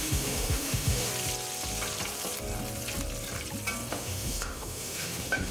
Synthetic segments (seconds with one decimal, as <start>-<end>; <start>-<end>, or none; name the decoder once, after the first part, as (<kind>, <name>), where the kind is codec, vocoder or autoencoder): 0.0-1.1 (autoencoder, DAC-VAE); 3.9-5.5